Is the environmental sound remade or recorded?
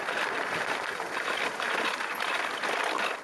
remade